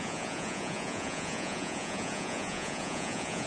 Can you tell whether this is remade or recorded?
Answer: remade